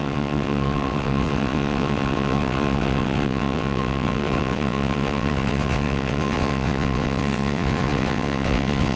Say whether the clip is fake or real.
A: fake